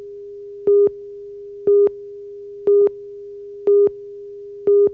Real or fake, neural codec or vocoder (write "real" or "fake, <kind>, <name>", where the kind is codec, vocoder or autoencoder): real